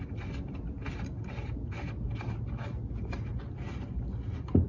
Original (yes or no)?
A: yes